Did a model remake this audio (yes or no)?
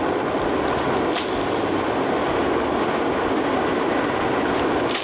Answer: no